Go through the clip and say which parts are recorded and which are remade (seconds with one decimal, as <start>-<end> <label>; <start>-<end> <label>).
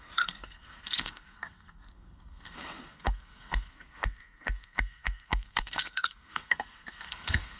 0.0-7.6 remade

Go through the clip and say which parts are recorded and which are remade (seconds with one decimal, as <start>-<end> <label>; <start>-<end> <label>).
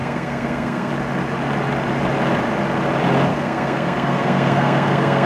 0.0-0.9 remade; 0.9-3.3 recorded; 3.3-5.3 remade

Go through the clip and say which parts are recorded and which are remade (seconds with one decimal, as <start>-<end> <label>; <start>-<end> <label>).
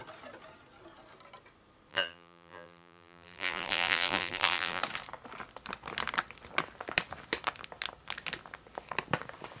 0.0-1.9 recorded; 1.9-4.8 remade; 4.8-9.6 recorded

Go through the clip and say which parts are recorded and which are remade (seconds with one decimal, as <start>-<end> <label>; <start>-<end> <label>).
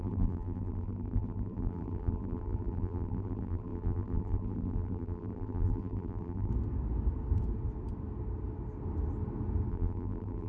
0.0-6.5 remade; 6.5-9.7 recorded; 9.7-10.5 remade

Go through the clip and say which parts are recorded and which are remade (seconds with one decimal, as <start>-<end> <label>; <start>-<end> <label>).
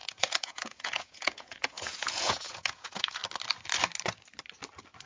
0.0-3.2 remade; 3.2-5.1 recorded